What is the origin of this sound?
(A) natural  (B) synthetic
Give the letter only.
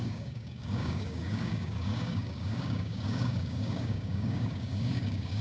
B